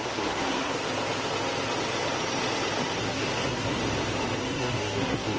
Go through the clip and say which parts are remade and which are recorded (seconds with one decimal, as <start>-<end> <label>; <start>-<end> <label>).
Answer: 0.0-0.8 remade; 0.8-3.0 recorded; 3.0-3.8 remade; 3.8-4.4 recorded; 4.4-5.4 remade